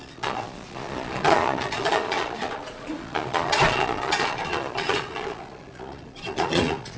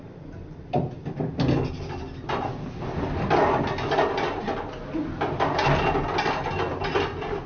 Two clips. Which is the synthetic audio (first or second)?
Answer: first